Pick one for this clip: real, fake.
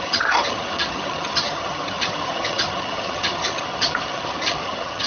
fake